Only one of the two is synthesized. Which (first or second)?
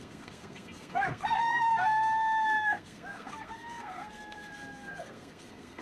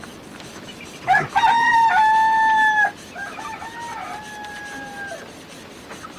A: first